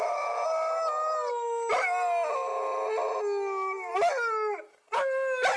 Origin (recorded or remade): recorded